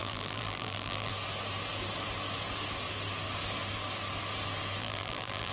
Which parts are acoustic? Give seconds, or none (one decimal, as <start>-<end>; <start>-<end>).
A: 1.1-4.8